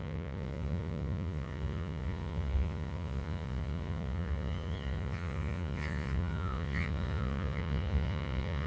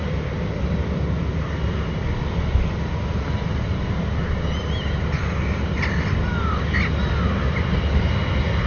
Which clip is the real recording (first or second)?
second